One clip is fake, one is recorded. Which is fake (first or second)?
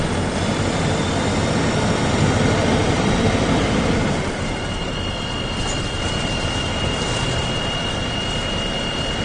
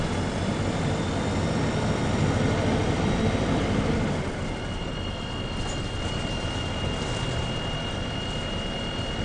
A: first